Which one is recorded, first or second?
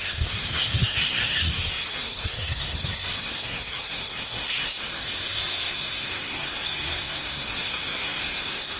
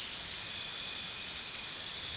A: second